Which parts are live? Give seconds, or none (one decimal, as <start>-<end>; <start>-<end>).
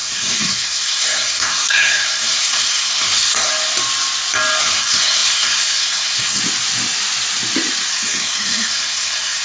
3.5-4.6; 6.4-7.9